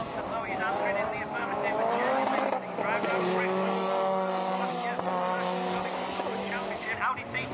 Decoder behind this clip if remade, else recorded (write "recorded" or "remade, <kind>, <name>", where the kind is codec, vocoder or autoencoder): recorded